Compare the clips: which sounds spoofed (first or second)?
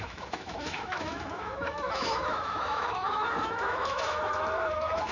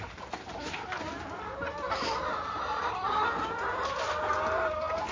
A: first